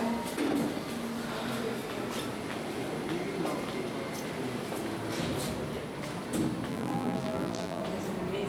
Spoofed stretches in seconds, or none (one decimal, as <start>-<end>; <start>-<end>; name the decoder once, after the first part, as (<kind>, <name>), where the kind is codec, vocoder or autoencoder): 6.7-7.8 (vocoder, BigVGAN v2)